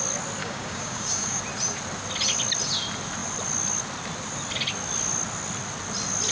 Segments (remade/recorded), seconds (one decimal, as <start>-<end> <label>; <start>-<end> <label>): 0.0-0.4 recorded; 0.4-1.4 remade; 1.4-6.3 recorded